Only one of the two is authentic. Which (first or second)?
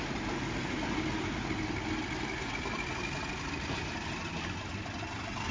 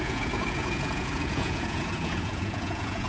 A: first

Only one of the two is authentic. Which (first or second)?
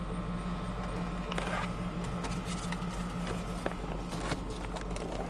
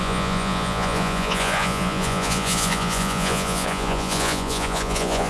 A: first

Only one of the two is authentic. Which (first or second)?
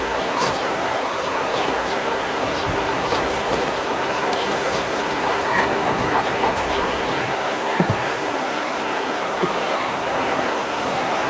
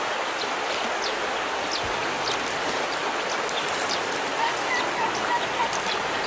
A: second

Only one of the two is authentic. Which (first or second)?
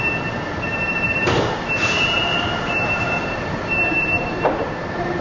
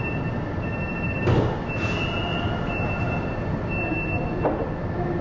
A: second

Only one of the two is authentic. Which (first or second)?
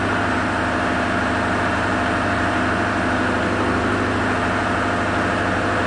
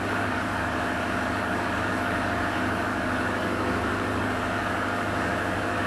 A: first